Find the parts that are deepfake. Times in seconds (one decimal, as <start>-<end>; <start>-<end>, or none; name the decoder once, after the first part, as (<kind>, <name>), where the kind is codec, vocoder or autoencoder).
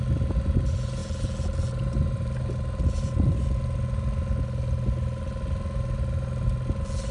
none